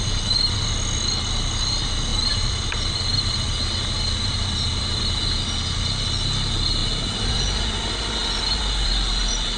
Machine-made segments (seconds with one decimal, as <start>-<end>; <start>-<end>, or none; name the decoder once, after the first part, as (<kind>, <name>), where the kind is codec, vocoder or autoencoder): 2.1-5.2 (vocoder, BigVGAN v2)